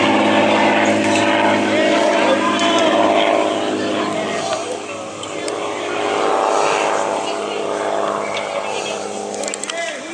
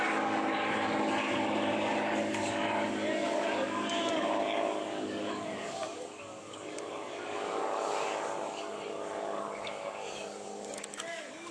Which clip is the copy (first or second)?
second